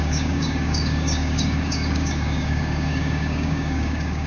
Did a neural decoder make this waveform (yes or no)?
yes